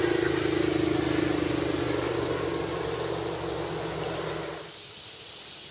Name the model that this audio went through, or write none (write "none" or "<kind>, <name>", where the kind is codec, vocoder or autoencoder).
none